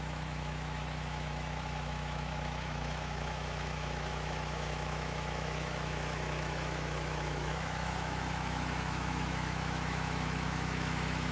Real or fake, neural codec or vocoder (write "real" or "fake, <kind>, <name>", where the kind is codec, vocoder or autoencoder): fake, autoencoder, DAC-VAE